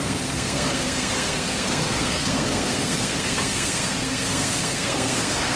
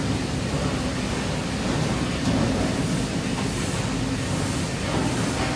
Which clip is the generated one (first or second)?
first